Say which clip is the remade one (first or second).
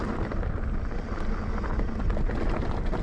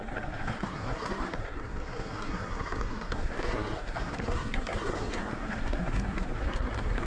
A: second